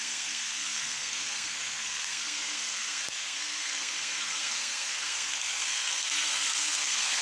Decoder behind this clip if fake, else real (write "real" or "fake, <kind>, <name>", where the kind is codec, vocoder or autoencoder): fake, codec, SNAC